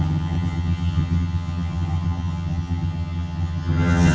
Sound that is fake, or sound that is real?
fake